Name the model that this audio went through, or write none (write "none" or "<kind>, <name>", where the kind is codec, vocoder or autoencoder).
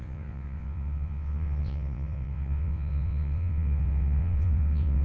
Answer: vocoder, WaveNeXt